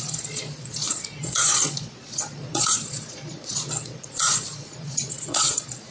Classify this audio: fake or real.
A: fake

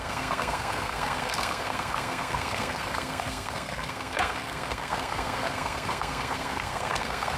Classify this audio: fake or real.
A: fake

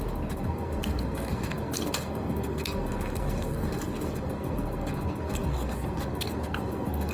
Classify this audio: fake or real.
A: fake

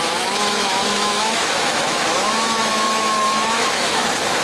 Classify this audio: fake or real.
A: fake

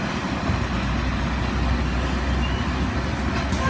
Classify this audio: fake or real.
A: real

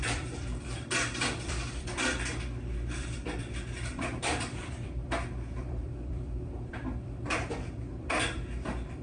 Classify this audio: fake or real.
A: fake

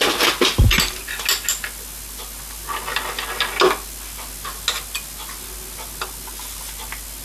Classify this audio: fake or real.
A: real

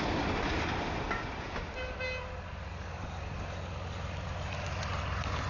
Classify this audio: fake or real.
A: real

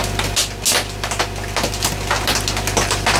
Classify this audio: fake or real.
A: real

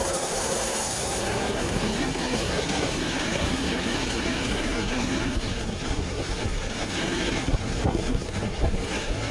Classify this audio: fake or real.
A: fake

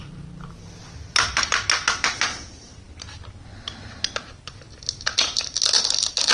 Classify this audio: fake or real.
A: real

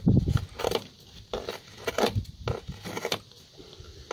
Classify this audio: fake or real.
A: real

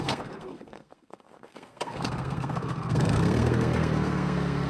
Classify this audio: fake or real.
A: fake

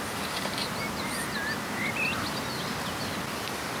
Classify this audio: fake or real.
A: real